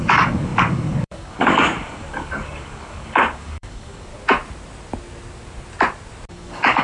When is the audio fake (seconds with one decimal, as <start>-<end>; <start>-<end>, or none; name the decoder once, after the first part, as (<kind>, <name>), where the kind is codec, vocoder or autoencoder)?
0.0-4.1 (codec, DAC); 6.3-6.8

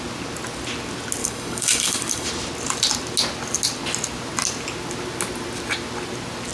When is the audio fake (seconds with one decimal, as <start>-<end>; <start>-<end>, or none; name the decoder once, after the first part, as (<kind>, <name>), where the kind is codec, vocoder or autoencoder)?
1.2-2.3 (codec, DAC)

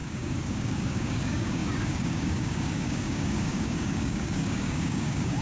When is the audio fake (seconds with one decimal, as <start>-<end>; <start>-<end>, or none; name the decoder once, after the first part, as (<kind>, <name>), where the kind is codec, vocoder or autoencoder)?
0.0-5.4 (codec, DAC)

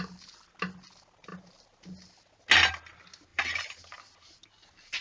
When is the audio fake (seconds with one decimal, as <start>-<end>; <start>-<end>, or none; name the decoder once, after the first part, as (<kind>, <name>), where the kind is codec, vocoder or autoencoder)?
none

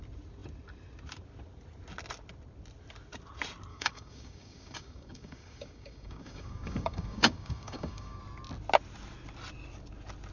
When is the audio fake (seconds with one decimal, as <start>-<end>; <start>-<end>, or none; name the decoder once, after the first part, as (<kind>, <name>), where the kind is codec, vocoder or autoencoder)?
3.7-8.2 (codec, DAC)

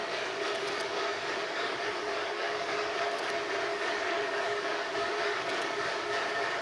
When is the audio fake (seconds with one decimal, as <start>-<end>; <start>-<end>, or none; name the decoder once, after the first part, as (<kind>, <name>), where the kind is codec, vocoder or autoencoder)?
0.0-3.3 (codec, DAC); 3.7-6.6

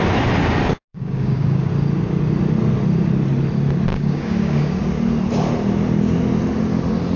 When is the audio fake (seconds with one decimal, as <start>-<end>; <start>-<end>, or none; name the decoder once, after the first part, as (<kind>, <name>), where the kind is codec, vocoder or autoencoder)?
0.9-1.7 (codec, DAC); 3.9-4.8

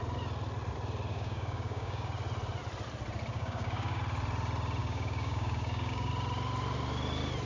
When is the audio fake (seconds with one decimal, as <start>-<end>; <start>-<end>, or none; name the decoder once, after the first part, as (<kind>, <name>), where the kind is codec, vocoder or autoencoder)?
1.1-2.1 (codec, DAC); 3.3-4.0; 4.8-6.1